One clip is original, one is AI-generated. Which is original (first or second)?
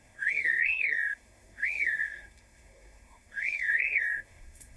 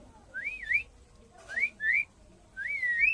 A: second